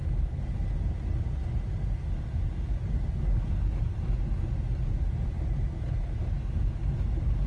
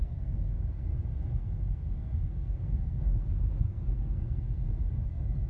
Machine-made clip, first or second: second